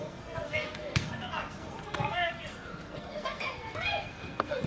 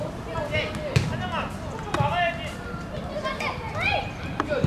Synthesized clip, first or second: first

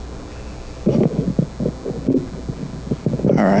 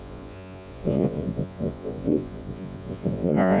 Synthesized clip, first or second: second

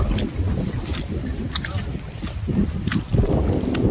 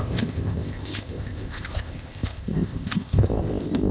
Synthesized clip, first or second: second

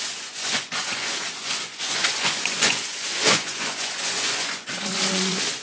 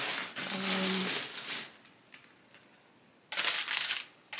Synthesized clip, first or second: first